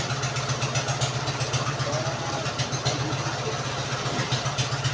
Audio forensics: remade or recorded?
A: recorded